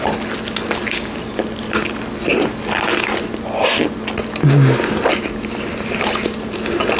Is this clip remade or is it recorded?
recorded